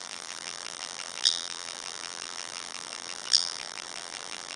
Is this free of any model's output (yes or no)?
no